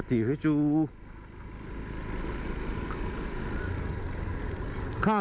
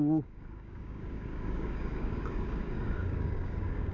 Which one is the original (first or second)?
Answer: first